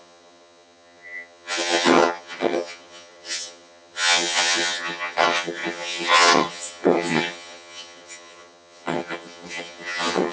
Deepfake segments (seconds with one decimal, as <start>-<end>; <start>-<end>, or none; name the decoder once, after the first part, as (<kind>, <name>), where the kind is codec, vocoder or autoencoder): 0.0-10.3 (vocoder, HiFi-GAN)